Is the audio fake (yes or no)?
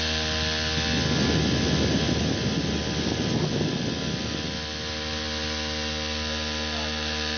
no